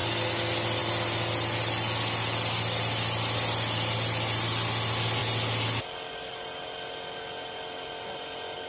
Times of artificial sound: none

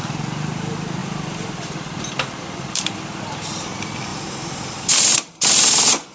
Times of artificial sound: 1.0-3.2 (vocoder, BigVGAN v2); 4.1-5.4

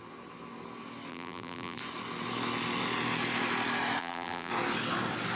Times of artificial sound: 1.1-1.8 (vocoder, BigVGAN v2); 4.0-4.5

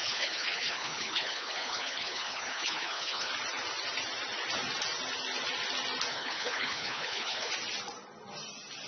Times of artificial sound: 0.0-3.3 (codec, HILCodec); 6.1-7.5

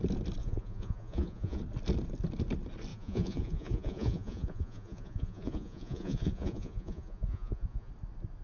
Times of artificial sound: 0.4-1.6 (vocoder, Vocos); 2.9-7.9

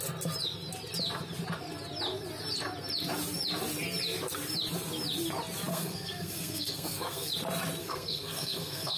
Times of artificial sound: 5.7-7.3 (codec, SNAC); 7.8-9.0

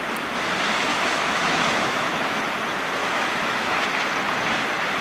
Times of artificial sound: 0.9-2.4 (autoencoder, DAC-VAE); 3.0-3.7

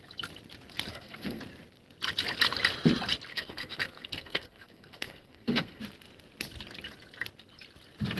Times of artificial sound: 0.9-1.4 (codec, SNAC); 3.3-5.8